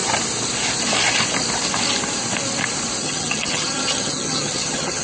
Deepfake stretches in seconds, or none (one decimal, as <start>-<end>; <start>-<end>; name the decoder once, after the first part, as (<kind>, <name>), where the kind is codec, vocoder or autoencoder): 3.0-5.0 (vocoder, HiFi-GAN)